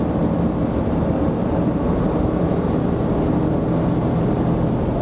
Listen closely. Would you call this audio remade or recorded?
recorded